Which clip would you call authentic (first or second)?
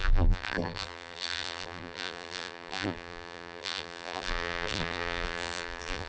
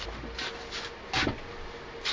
second